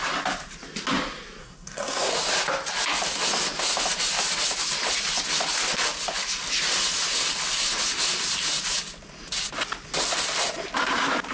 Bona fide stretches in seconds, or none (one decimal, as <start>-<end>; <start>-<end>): 0.0-1.4; 2.1-11.3